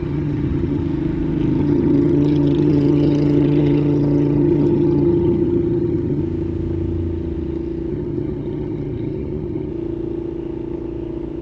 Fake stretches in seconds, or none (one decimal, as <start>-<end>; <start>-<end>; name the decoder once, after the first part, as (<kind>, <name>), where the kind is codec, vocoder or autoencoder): 0.0-0.8 (vocoder, HiFi-GAN); 1.6-6.2; 7.9-9.7